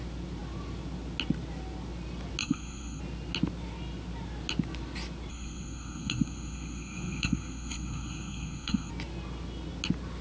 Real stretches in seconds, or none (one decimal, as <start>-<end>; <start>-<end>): 0.0-2.4; 3.0-5.3; 8.9-10.2